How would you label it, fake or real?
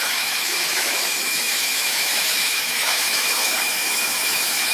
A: fake